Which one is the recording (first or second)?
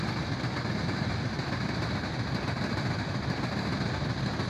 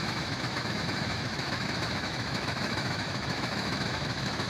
first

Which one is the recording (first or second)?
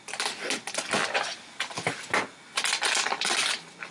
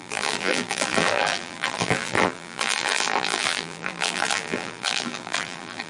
first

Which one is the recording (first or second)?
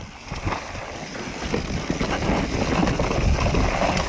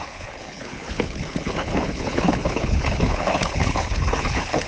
first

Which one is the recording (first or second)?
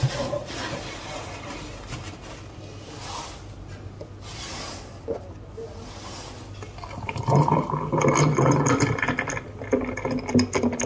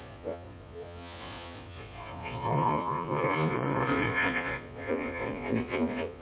first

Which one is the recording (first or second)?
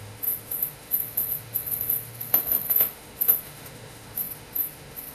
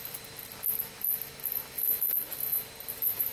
second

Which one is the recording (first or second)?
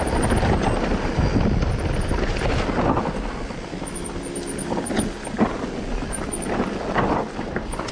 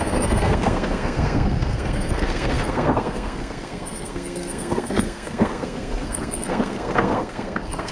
first